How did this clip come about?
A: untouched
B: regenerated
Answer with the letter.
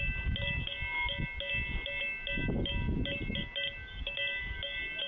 A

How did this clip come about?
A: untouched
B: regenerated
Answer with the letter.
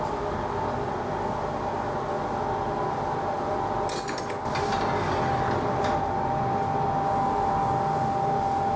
A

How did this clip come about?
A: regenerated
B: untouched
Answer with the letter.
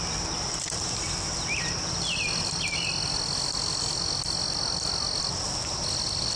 B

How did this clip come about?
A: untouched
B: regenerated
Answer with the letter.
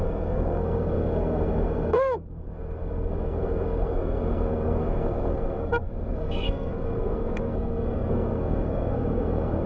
B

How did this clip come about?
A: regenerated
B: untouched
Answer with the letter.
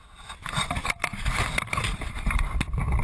B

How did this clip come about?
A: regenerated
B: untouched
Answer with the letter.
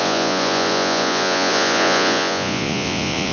A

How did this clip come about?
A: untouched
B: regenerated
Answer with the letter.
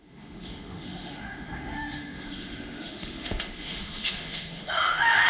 B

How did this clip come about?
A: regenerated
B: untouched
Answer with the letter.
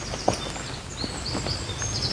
B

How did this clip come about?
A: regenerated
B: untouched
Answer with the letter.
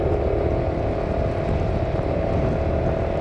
A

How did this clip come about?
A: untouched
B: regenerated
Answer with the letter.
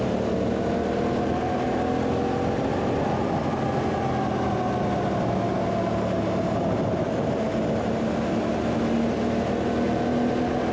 A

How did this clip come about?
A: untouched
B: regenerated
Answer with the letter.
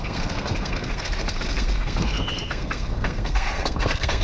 B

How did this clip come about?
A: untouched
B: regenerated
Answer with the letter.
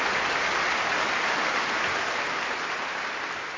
A